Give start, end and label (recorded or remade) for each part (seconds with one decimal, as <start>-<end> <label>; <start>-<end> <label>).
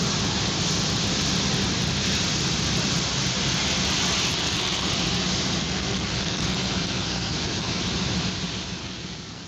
0.0-4.3 recorded; 4.3-4.9 remade; 4.9-5.6 recorded; 5.6-7.8 remade; 7.8-8.8 recorded; 8.8-9.5 remade